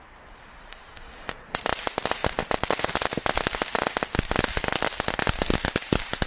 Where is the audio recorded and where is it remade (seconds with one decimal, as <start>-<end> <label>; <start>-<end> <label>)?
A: 0.0-2.2 remade; 2.2-5.6 recorded; 5.6-6.3 remade